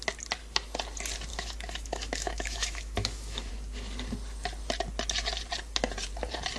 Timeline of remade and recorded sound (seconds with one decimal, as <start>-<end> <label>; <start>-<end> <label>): 0.0-1.3 recorded; 1.3-3.5 remade; 3.5-6.6 recorded